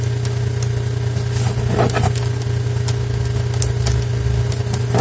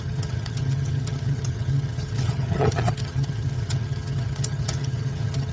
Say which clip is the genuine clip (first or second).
first